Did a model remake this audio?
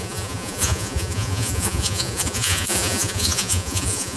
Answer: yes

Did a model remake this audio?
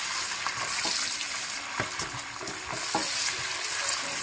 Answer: no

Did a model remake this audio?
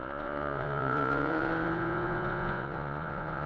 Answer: yes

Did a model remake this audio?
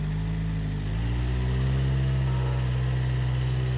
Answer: no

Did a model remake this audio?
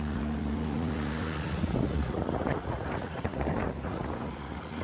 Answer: yes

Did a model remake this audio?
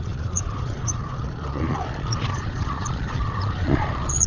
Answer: yes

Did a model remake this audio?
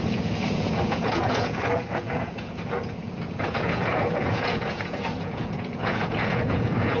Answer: yes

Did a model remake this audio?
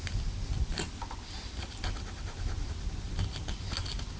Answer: no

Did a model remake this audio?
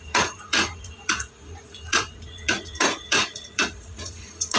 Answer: yes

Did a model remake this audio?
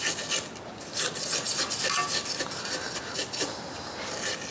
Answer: no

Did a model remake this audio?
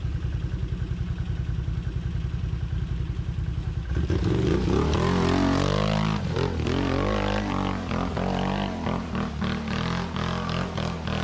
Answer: no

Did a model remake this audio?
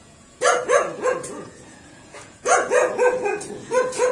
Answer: yes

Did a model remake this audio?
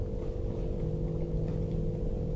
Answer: no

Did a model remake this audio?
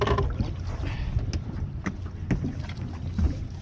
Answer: no